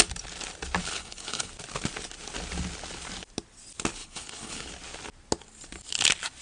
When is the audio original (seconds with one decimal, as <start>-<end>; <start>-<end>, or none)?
0.0-0.8; 1.5-4.0; 4.7-6.4

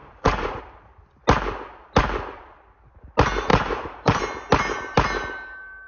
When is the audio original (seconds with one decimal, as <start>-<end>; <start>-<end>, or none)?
0.6-3.5; 4.2-5.9